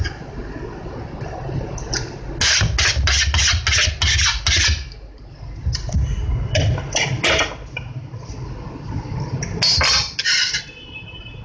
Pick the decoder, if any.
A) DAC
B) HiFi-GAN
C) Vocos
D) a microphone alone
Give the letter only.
D